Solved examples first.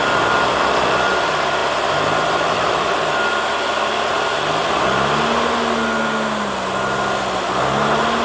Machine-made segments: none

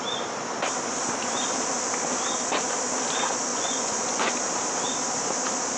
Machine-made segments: 3.5-4.3 (vocoder, Vocos)

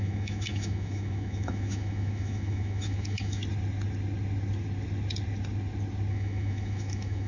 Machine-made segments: 0.0-3.4 (autoencoder, DAC-VAE); 6.1-7.3

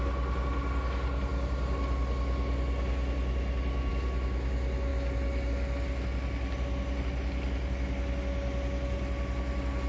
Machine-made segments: none

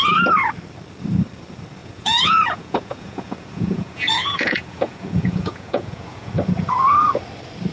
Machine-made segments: 1.8-6.3 (vocoder, Vocos)

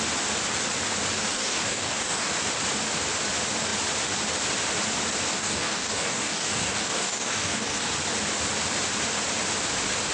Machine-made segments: 1.3-2.3 (codec, DAC); 5.3-7.9

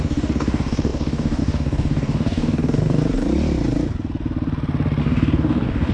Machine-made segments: 0.0-3.0 (codec, DAC); 5.0-5.9

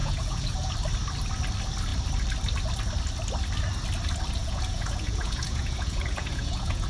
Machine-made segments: 0.0-0.7 (vocoder, Vocos); 4.4-6.9